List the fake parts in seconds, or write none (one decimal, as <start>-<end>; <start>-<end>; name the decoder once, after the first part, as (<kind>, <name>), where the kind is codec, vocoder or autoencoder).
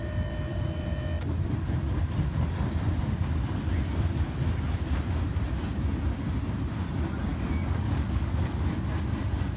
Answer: 7.3-8.3 (codec, DAC)